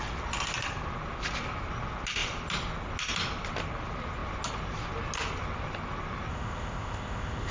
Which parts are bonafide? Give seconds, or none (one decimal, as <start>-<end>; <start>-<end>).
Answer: 0.0-6.3